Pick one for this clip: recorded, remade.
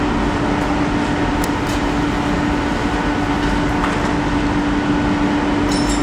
recorded